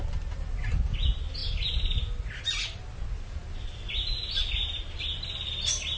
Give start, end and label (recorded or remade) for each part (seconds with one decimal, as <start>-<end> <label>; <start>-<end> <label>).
0.0-6.0 recorded